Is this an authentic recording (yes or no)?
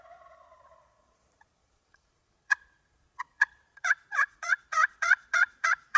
no